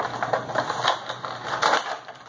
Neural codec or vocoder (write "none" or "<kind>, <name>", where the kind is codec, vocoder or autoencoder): none